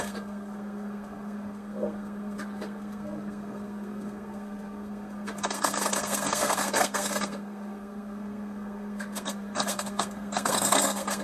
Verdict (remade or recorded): remade